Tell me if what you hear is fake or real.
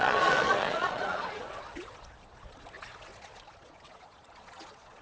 fake